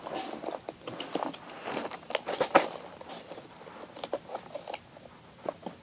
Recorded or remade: recorded